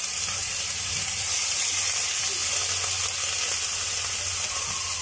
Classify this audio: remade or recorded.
recorded